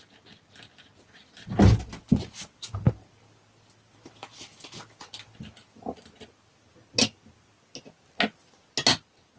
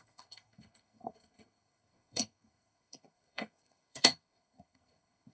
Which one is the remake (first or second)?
second